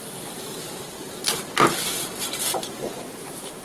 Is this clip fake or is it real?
real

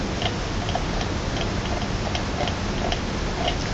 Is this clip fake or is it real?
real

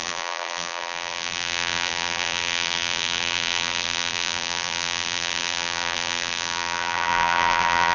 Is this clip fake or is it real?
fake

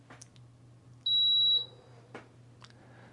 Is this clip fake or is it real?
real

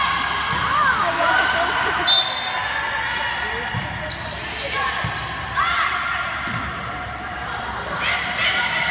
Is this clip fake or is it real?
real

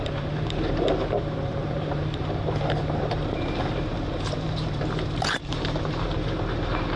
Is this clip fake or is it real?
fake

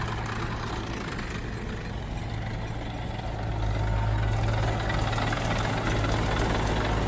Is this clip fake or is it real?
real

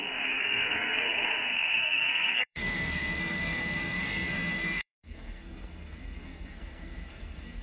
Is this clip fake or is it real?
fake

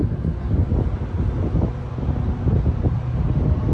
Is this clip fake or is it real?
real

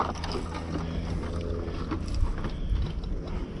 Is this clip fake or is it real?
real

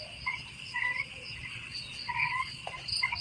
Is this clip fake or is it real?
fake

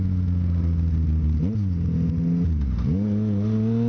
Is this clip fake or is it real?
real